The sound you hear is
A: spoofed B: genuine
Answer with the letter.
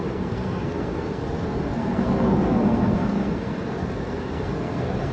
A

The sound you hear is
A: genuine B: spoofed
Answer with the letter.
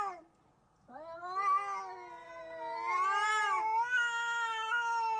A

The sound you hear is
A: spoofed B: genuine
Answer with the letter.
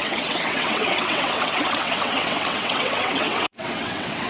A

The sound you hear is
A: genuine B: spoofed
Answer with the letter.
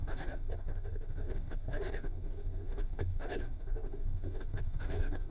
B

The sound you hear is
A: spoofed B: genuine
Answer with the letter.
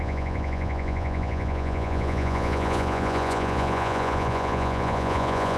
A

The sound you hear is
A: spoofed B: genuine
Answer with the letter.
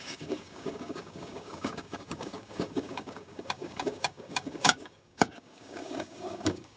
A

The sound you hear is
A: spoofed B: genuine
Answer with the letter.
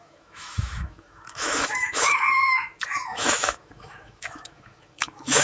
A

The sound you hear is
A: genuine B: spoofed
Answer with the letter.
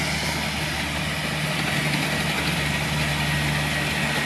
A